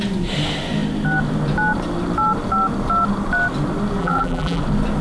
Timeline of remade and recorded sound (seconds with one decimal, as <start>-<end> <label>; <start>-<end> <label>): 0.0-4.0 recorded; 4.0-4.6 remade; 4.6-5.0 recorded